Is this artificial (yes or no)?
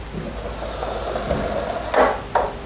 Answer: no